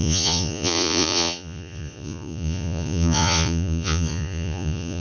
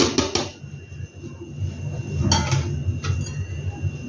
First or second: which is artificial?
first